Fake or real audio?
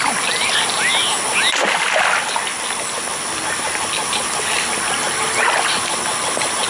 real